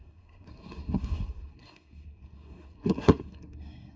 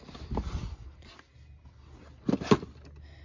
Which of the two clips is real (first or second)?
second